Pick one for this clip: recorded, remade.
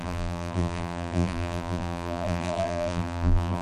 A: remade